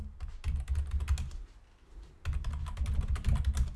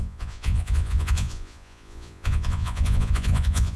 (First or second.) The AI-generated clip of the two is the second